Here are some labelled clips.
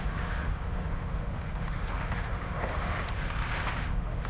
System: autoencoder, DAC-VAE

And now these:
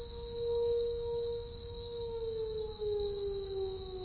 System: autoencoder, DAC-VAE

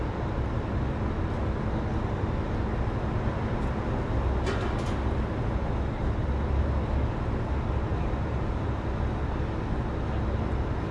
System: none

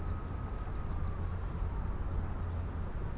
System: none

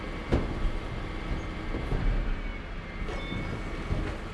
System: none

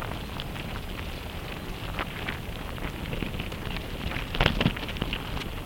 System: none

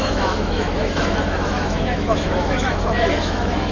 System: autoencoder, DAC-VAE